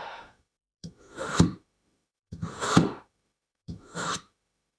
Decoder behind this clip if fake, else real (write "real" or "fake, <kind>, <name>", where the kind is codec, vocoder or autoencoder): fake, autoencoder, DAC-VAE